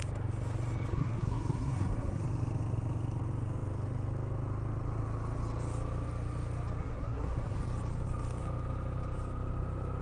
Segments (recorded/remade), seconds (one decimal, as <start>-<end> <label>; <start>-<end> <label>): 0.0-0.9 recorded; 0.9-2.2 remade; 2.2-6.8 recorded; 6.8-7.6 remade; 7.6-10.0 recorded